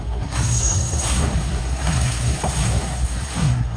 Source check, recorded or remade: remade